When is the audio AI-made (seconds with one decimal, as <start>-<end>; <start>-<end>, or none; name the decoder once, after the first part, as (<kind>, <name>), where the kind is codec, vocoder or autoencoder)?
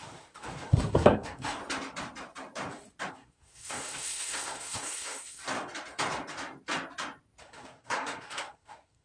0.0-1.6 (codec, SNAC); 3.1-5.4; 7.4-9.0